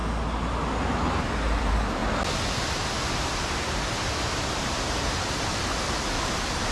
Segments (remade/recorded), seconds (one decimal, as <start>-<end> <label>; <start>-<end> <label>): 0.0-0.9 recorded; 0.9-2.0 remade; 2.0-6.0 recorded; 6.0-6.7 remade